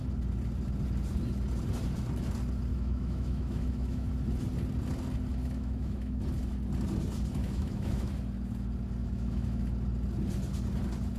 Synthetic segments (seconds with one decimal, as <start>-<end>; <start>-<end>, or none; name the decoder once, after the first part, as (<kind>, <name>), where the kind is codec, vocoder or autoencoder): 2.7-4.1 (autoencoder, DAC-VAE); 5.4-6.2; 7.4-8.1; 9.0-9.6

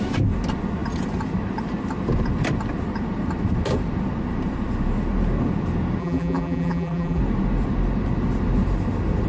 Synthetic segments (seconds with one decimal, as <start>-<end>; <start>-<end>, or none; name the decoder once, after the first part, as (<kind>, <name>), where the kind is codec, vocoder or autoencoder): 6.0-7.2 (vocoder, BigVGAN v2)

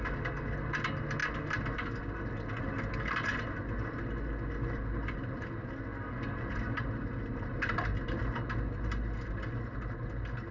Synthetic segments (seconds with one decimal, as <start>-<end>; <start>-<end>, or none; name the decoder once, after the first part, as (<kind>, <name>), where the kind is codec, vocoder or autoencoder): none

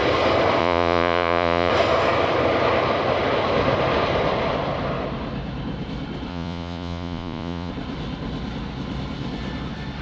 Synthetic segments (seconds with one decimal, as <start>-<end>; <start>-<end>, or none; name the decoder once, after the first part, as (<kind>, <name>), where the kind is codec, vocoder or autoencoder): 0.6-1.7 (vocoder, Vocos); 6.3-7.7

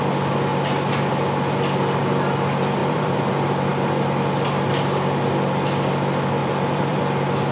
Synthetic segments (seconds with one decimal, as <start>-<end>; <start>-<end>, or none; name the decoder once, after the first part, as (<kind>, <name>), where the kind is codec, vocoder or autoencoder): 2.8-3.3 (vocoder, BigVGAN v2); 6.4-7.0

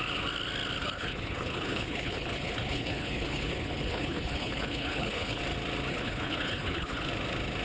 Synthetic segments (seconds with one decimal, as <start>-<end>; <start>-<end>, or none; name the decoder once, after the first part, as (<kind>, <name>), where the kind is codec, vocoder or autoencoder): 0.8-5.4 (codec, HILCodec); 5.9-7.1